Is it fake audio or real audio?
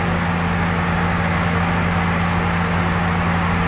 real